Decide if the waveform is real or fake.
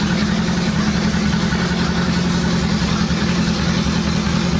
real